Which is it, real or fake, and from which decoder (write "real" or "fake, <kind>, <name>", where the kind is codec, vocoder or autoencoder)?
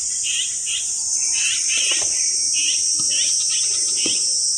real